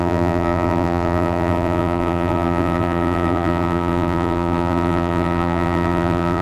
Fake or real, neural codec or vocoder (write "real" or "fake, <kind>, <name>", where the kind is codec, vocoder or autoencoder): fake, vocoder, BigVGAN v2